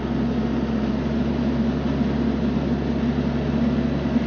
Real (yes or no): yes